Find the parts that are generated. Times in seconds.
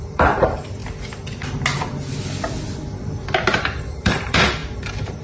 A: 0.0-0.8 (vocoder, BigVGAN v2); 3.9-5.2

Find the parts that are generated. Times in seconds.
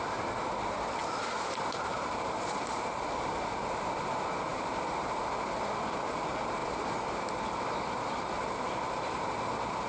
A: 1.0-3.0 (vocoder, BigVGAN v2); 4.5-5.2; 6.6-7.1